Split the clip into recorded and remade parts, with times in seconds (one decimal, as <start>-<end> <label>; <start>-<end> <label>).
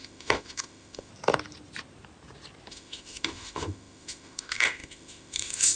0.0-1.1 remade; 1.1-2.7 recorded; 2.7-5.8 remade